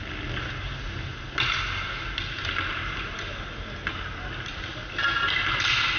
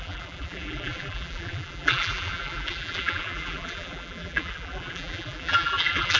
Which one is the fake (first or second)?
second